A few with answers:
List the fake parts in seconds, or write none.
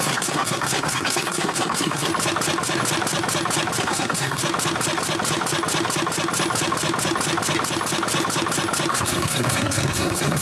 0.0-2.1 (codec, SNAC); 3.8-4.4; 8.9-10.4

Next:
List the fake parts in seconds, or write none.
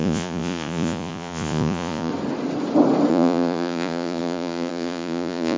0.0-2.1 (vocoder, Vocos); 3.1-5.6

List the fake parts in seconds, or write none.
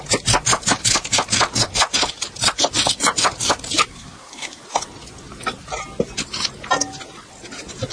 3.9-4.6 (codec, SNAC)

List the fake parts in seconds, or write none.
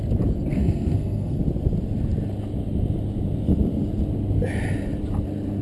0.5-1.4 (codec, SNAC)